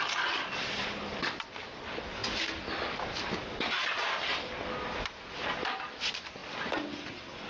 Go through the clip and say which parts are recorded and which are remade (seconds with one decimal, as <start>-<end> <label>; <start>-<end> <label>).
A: 0.0-7.5 recorded